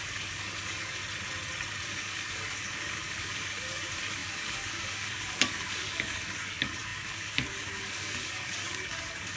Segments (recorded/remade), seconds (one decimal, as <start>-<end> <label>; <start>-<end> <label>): 0.0-1.0 remade; 1.0-1.9 recorded; 1.9-9.4 remade